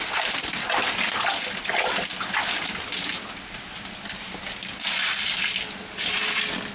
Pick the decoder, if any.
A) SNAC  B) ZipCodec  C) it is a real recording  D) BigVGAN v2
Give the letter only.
C